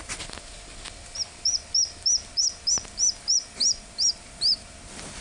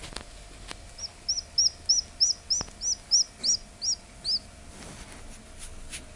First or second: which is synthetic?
first